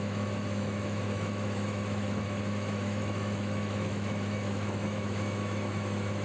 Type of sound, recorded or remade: remade